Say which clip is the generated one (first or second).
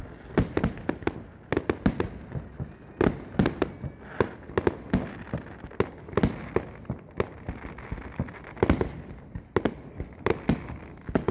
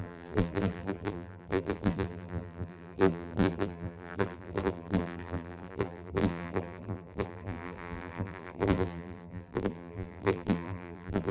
second